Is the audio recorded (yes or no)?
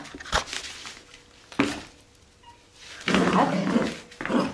yes